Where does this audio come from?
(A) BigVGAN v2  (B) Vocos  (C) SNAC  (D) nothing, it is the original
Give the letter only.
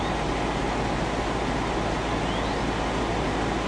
D